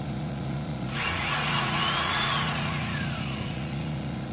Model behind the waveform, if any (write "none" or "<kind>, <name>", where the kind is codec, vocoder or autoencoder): vocoder, Vocos